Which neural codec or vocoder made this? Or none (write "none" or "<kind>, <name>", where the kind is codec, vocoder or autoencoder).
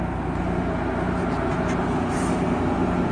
none